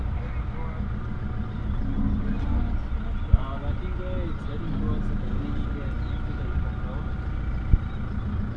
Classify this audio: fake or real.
real